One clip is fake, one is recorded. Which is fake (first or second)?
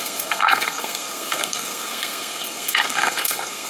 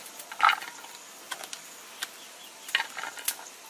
first